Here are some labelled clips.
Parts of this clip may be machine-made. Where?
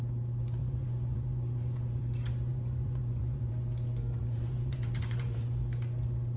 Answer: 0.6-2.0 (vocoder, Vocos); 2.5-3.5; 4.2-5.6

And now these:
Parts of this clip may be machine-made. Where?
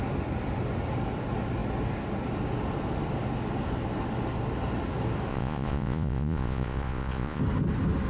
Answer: 5.3-7.4 (vocoder, Vocos)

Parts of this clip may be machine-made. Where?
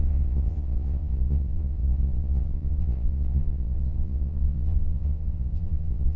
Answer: 0.0-6.2 (vocoder, Vocos)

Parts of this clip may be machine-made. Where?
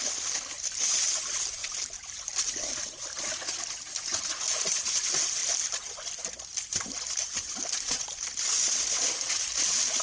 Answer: none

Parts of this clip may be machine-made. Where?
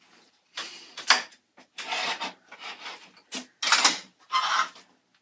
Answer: none